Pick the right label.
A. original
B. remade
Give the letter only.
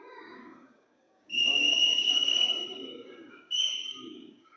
B